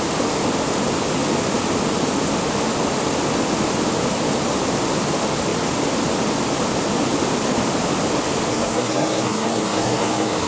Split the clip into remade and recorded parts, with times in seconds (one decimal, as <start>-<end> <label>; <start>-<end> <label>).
0.0-8.5 recorded; 8.5-10.5 remade